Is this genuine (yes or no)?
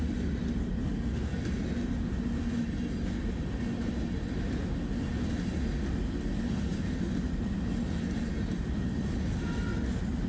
yes